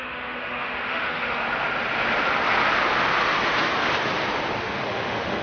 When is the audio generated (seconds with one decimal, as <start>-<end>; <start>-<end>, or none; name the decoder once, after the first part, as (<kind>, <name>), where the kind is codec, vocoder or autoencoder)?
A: 0.0-1.4 (autoencoder, DAC-VAE); 4.6-5.4